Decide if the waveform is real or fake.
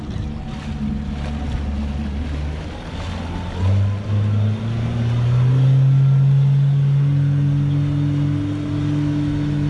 real